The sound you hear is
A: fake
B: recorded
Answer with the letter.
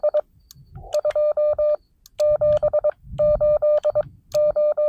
B